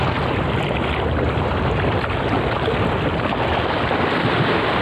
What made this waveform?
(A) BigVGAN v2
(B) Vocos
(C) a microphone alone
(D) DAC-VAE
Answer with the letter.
C